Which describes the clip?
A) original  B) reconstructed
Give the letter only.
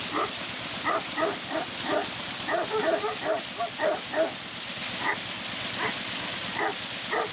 A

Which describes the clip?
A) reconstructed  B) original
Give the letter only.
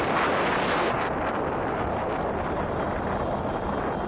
B